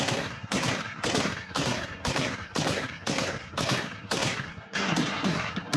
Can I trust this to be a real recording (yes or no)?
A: no